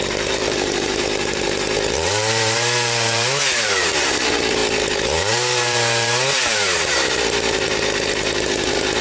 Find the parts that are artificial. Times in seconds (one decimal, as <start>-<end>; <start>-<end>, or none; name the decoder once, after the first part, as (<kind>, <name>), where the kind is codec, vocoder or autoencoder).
0.0-9.0 (vocoder, BigVGAN v2)